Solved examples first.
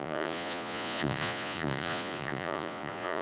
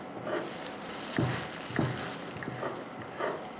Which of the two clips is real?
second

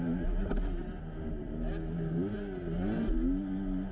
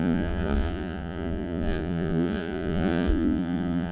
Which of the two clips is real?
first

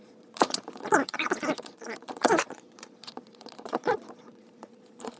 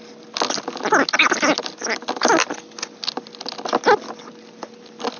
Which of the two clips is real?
second